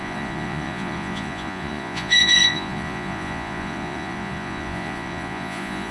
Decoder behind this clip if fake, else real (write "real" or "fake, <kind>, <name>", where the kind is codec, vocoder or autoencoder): fake, vocoder, Vocos